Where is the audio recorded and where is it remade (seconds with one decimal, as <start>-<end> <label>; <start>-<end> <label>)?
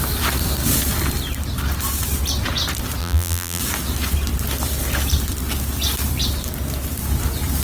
0.0-3.0 recorded; 3.0-3.6 remade; 3.6-7.6 recorded